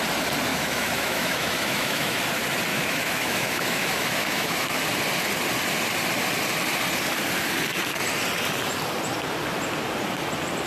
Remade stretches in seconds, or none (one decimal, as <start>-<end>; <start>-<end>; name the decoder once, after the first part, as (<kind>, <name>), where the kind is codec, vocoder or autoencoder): 0.5-2.2 (autoencoder, DAC-VAE); 2.7-4.8